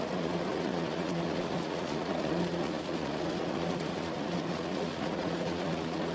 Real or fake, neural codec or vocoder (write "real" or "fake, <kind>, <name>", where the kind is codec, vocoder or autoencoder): fake, vocoder, Vocos